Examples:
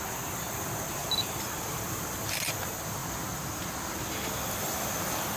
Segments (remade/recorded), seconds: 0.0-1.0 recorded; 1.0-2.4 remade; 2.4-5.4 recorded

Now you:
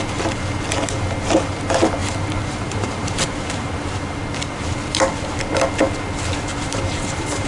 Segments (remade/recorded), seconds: 0.0-2.0 recorded; 2.0-4.2 remade; 4.2-6.5 recorded; 6.5-7.5 remade

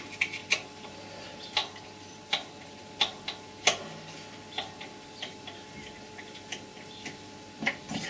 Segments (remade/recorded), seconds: 0.0-0.4 recorded; 0.4-1.0 remade; 1.0-1.6 recorded; 1.6-2.8 remade; 2.8-8.1 recorded

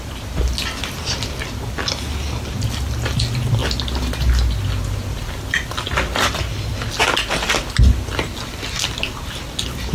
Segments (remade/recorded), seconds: 0.0-5.1 recorded; 5.1-6.2 remade; 6.2-9.9 recorded